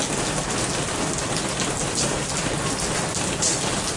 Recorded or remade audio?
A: recorded